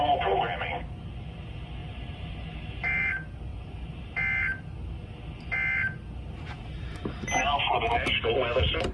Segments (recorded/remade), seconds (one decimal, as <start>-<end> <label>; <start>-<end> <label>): 0.0-1.8 recorded; 1.8-3.1 remade; 3.1-3.5 recorded; 3.5-4.0 remade; 4.0-8.9 recorded